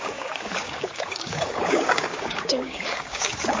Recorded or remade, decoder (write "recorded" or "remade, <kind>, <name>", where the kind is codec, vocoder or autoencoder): remade, codec, DAC